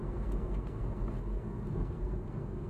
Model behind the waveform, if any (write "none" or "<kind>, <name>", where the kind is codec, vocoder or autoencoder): codec, SNAC